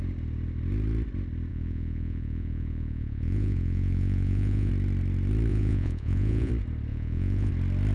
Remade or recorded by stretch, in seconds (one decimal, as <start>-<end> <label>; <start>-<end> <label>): 0.0-1.5 recorded; 1.5-4.7 remade; 4.7-5.5 recorded; 5.5-6.5 remade; 6.5-6.9 recorded; 6.9-7.5 remade; 7.5-7.9 recorded